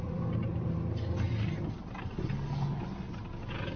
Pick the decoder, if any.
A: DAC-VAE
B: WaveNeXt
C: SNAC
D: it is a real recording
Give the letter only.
D